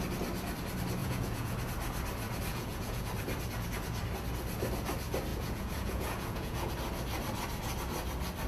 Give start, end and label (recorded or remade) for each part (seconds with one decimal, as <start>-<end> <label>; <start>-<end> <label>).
0.0-1.0 recorded; 1.0-1.6 remade; 1.6-2.5 recorded; 2.5-3.1 remade; 3.1-5.3 recorded; 5.3-6.7 remade; 6.7-8.5 recorded